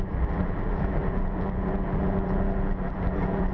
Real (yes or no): no